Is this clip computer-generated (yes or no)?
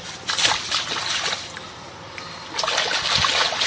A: no